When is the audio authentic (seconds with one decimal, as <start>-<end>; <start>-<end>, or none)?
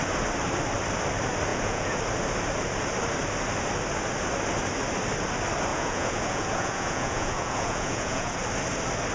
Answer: 0.0-1.5; 2.0-5.7; 8.4-9.1